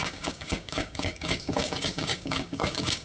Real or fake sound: fake